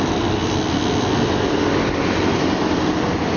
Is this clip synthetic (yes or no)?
no